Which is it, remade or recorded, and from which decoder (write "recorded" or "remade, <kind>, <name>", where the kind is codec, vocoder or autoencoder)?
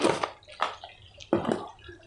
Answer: recorded